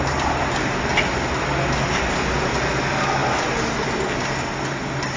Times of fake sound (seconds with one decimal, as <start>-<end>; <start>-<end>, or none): none